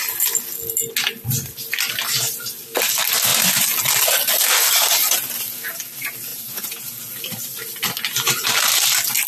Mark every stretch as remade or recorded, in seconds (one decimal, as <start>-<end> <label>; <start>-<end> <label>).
0.0-6.3 recorded; 6.3-7.1 remade; 7.1-9.3 recorded